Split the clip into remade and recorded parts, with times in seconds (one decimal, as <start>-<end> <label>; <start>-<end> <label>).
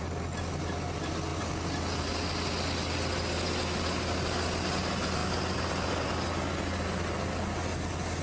0.0-8.2 recorded